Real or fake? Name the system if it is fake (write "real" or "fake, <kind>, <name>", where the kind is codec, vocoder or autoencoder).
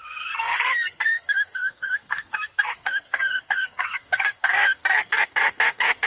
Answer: fake, codec, SNAC